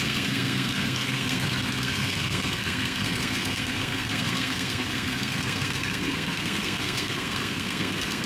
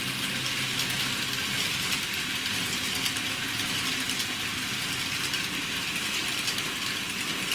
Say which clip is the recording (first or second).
second